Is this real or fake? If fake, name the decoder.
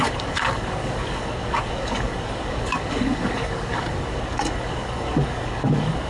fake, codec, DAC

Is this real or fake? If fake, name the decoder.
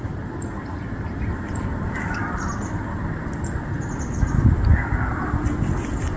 real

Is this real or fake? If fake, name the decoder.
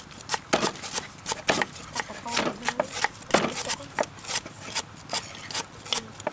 real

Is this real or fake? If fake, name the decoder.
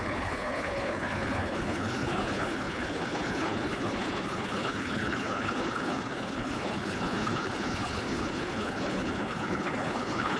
fake, codec, HILCodec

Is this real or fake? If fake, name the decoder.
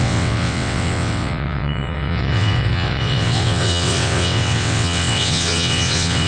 fake, vocoder, WaveNeXt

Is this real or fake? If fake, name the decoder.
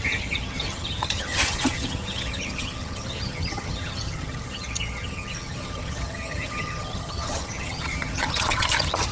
fake, vocoder, HiFi-GAN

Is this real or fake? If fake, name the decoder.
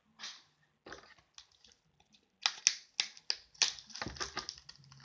real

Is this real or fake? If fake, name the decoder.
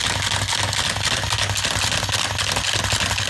real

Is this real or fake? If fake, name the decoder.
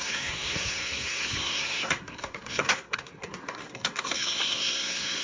fake, codec, SNAC